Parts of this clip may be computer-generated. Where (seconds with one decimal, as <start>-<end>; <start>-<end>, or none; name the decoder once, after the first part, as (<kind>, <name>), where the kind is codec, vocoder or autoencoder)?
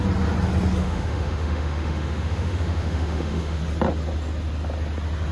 0.8-3.6 (autoencoder, DAC-VAE)